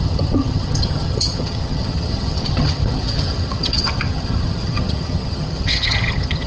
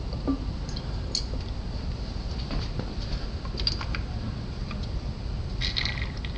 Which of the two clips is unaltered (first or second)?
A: second